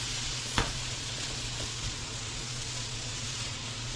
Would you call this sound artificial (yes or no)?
yes